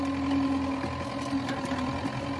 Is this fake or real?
real